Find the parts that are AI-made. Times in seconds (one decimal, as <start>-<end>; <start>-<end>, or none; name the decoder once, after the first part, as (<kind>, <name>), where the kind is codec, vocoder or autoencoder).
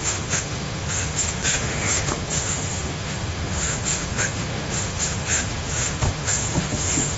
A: 0.0-7.2 (autoencoder, DAC-VAE)